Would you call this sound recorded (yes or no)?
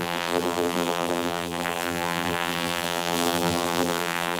no